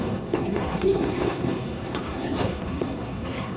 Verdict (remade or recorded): remade